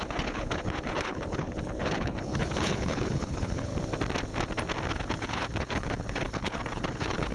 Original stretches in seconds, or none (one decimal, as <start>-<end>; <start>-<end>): 3.7-4.9